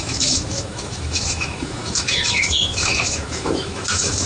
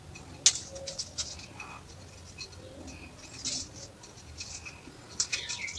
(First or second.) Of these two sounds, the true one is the second